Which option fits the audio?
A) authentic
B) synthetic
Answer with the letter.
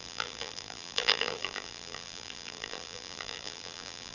B